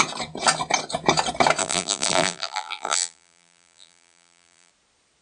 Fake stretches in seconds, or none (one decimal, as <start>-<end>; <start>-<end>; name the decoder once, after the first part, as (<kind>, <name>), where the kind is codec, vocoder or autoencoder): 1.6-4.7 (vocoder, BigVGAN v2)